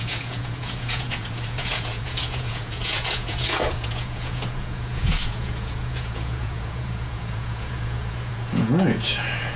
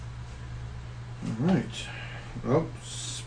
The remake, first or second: first